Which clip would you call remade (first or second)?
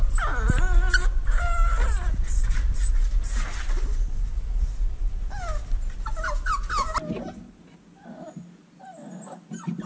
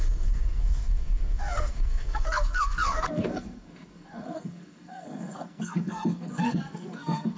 second